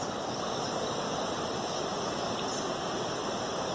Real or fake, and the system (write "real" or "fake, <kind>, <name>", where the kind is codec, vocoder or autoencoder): real